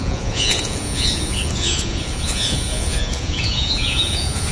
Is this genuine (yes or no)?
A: no